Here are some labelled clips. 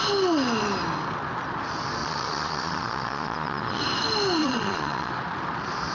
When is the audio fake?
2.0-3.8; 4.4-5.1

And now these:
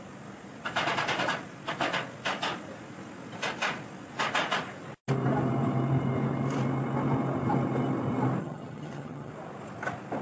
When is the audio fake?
8.4-9.3

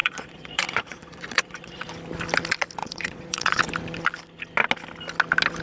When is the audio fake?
0.0-1.9; 2.8-3.6

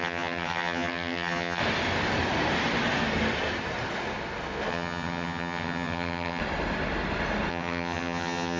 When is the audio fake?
0.0-1.6; 4.7-6.4; 7.5-8.6

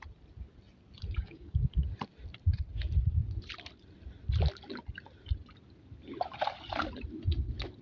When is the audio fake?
1.2-1.7

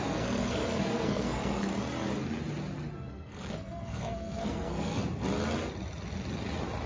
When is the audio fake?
0.0-1.7; 3.1-5.0

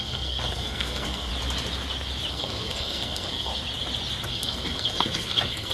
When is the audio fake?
0.0-1.3; 2.3-3.5; 4.3-5.7